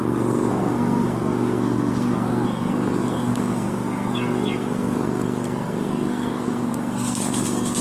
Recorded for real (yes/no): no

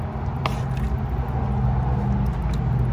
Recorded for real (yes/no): yes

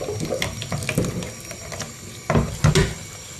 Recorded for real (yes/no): yes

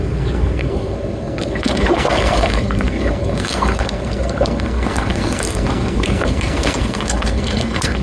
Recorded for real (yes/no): no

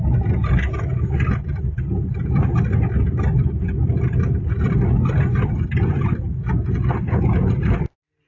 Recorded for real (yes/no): yes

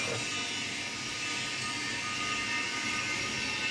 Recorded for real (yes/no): yes